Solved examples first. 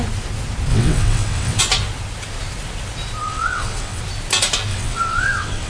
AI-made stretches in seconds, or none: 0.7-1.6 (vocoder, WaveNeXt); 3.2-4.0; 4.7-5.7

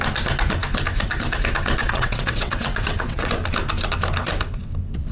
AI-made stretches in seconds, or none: 1.8-3.3 (vocoder, WaveNeXt)

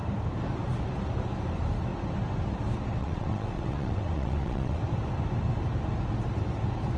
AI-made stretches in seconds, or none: 3.0-4.8 (vocoder, WaveNeXt)

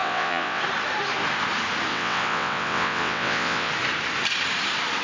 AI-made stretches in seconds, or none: 0.0-0.6 (vocoder, WaveNeXt); 1.9-3.7

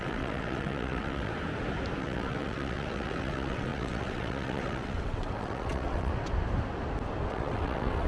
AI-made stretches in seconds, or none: 0.0-1.3 (vocoder, WaveNeXt); 2.0-6.1; 7.3-8.1

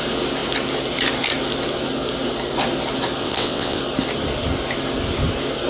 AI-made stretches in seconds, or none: 3.2-3.8 (vocoder, WaveNeXt)

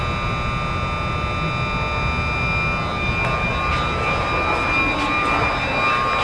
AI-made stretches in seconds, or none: none